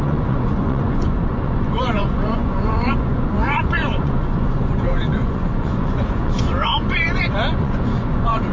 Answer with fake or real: fake